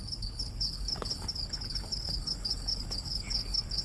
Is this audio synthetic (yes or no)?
yes